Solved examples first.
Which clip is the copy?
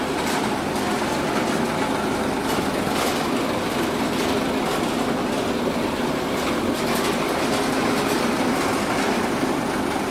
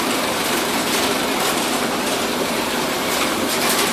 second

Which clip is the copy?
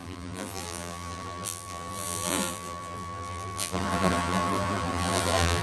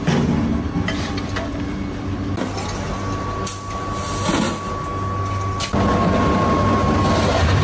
first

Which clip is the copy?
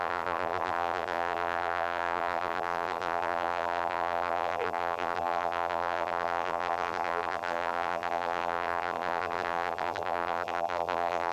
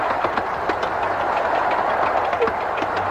first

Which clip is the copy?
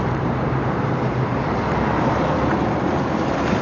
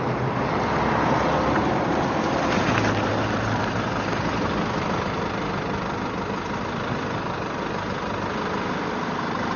first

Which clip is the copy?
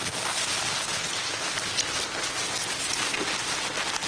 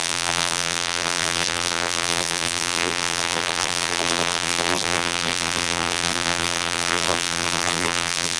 second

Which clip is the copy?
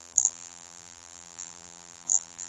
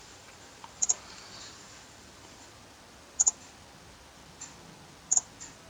first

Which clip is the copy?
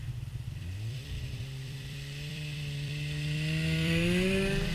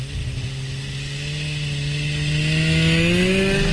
first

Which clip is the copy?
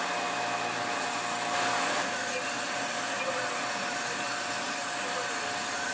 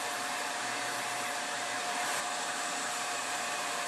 second